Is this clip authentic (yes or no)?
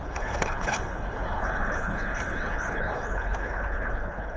no